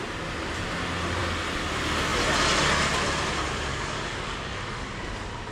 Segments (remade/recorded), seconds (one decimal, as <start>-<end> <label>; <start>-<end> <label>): 0.0-3.7 recorded; 3.7-4.9 remade; 4.9-5.5 recorded